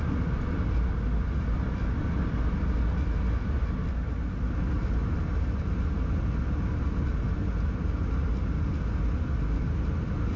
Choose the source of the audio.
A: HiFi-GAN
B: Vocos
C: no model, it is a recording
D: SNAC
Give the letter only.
C